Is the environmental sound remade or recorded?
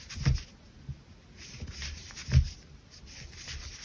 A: recorded